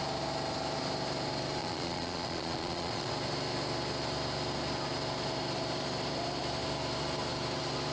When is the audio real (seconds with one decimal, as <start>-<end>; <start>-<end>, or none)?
0.0-1.6; 3.1-7.9